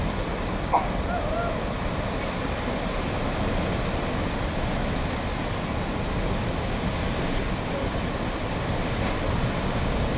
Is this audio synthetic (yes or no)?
no